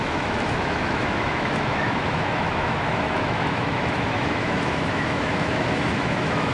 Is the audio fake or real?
fake